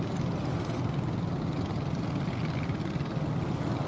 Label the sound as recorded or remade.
recorded